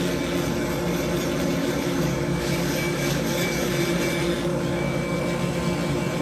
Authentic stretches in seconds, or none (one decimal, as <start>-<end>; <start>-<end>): 0.0-1.6; 3.7-4.5; 5.2-6.2